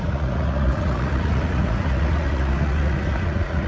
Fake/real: fake